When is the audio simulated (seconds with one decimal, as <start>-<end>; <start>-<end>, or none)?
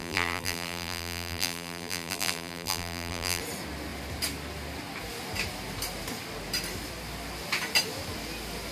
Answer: 0.0-3.4